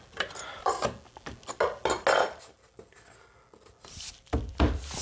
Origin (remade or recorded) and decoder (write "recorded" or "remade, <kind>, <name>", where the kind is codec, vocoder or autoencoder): recorded